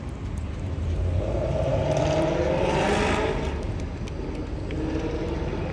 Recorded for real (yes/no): yes